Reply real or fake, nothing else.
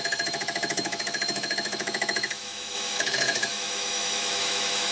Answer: fake